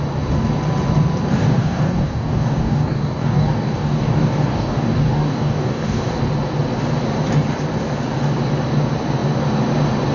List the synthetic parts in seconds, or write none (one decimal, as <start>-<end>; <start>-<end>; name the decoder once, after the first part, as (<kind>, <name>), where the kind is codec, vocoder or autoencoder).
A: 1.4-6.2 (codec, DAC)